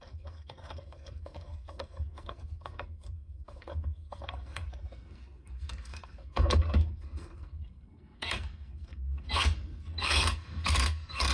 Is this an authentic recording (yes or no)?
no